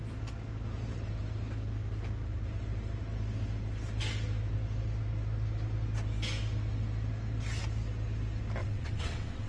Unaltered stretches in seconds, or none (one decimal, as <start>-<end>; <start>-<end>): 0.0-8.6